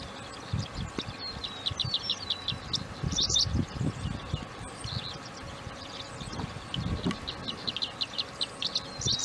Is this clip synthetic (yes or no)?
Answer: no